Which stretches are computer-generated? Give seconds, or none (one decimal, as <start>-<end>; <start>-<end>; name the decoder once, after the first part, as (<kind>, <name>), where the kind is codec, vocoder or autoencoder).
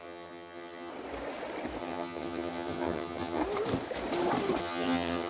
0.0-0.9 (vocoder, HiFi-GAN); 1.8-3.4; 4.6-5.3